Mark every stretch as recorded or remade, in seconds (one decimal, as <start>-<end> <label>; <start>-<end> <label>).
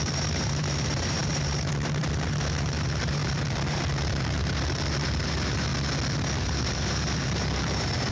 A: 0.0-5.7 remade; 5.7-6.4 recorded; 6.4-8.1 remade